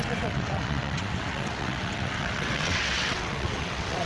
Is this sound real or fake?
fake